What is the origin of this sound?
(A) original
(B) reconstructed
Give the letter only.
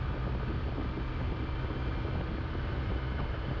A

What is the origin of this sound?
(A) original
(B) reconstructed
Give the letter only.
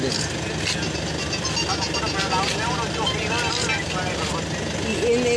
A